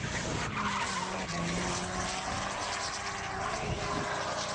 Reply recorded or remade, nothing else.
recorded